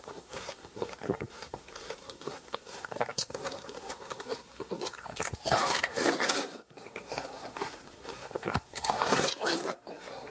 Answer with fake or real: fake